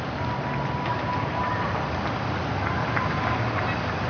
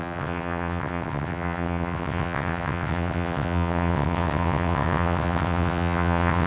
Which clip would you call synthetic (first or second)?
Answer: second